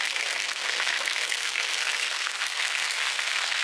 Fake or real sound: fake